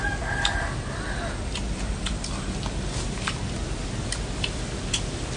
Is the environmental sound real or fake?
real